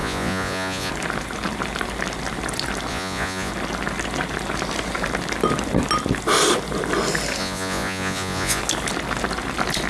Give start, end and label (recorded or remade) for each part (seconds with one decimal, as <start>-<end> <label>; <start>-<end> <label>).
0.0-0.9 remade; 0.9-2.9 recorded; 2.9-3.5 remade; 3.5-7.4 recorded; 7.4-8.6 remade; 8.6-9.9 recorded